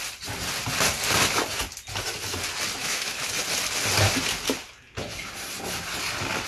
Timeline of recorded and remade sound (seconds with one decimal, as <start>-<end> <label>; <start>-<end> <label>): 0.0-2.8 recorded; 2.8-3.3 remade; 3.3-6.5 recorded